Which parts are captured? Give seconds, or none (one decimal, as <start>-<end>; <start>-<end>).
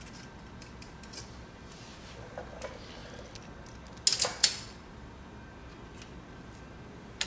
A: 0.0-7.3